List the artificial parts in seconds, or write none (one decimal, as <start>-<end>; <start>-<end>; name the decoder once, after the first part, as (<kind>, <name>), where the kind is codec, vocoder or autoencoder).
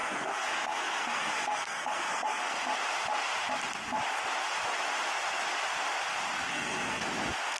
0.0-2.4 (codec, SNAC); 6.5-7.0